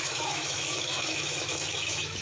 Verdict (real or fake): fake